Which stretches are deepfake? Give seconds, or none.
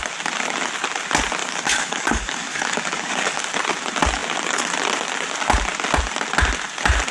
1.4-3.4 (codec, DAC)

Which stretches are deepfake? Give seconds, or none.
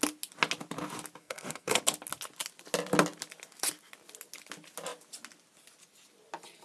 1.2-1.8 (codec, SNAC)